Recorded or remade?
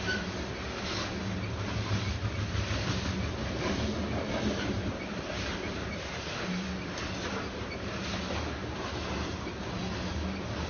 recorded